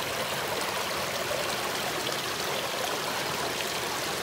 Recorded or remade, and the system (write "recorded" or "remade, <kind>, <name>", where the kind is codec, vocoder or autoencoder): recorded